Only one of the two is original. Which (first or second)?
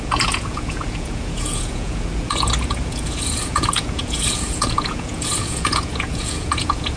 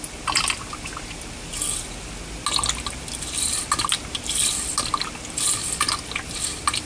second